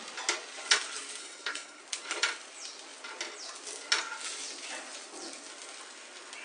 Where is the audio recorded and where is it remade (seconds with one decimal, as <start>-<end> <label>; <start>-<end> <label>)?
0.0-1.2 recorded; 1.2-1.8 remade; 1.8-6.4 recorded